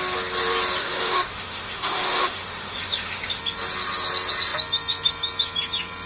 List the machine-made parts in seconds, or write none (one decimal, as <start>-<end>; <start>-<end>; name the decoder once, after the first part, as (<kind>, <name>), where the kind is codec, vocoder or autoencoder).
0.8-3.4 (autoencoder, DAC-VAE)